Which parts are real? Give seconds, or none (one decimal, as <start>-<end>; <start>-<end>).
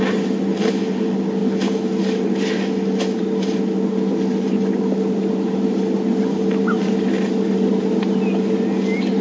0.0-9.2